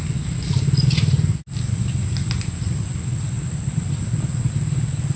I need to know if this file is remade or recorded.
recorded